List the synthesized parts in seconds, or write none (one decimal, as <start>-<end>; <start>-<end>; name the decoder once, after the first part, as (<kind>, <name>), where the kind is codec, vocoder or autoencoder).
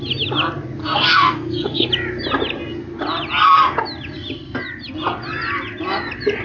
0.8-1.9 (codec, SNAC)